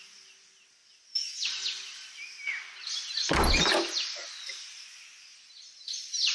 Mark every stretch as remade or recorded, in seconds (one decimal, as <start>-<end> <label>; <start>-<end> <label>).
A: 0.0-6.3 recorded